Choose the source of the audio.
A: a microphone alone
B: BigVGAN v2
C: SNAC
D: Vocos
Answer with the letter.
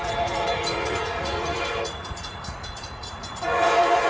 D